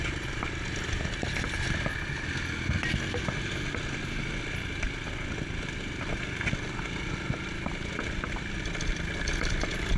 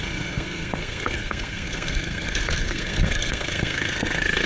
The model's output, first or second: second